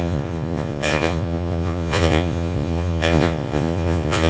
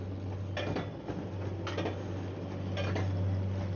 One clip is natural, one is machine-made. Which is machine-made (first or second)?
first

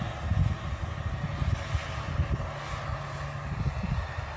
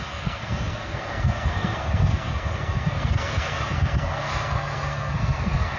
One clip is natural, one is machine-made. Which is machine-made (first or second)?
second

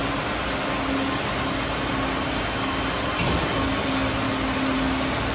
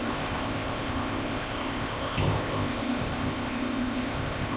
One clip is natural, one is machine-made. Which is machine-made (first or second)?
second